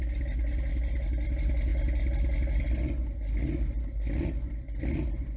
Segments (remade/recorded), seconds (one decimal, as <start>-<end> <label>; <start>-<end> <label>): 0.0-5.4 recorded